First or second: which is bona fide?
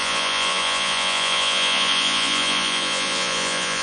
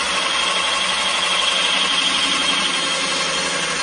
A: second